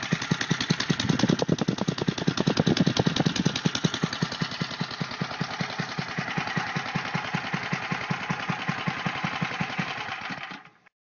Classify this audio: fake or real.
real